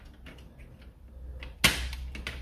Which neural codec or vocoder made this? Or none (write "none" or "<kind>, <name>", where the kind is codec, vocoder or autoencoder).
none